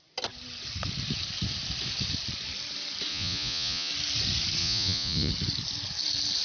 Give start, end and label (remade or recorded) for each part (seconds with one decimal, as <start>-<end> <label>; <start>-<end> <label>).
0.0-3.1 recorded; 3.1-3.9 remade; 3.9-4.6 recorded; 4.6-5.3 remade; 5.3-6.4 recorded